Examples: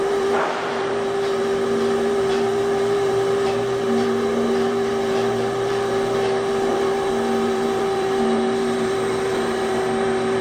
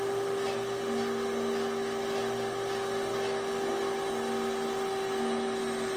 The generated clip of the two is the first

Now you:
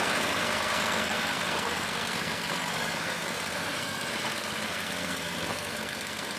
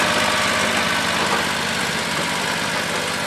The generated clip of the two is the first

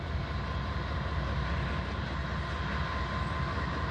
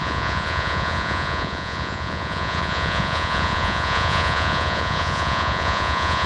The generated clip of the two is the second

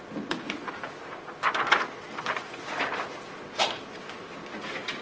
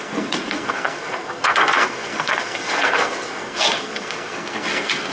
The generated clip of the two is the second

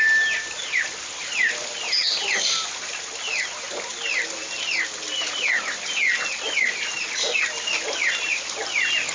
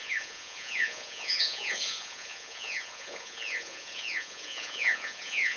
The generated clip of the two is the second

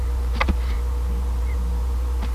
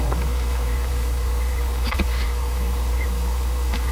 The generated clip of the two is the second